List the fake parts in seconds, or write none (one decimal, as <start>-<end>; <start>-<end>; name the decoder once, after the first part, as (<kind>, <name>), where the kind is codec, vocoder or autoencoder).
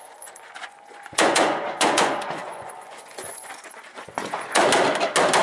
0.0-4.6 (vocoder, Vocos)